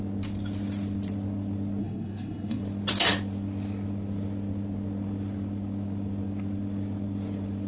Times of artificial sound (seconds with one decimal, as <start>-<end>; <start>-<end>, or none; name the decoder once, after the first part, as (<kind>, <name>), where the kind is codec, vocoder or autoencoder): 1.8-2.6 (codec, SNAC)